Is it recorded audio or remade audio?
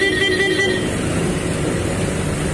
recorded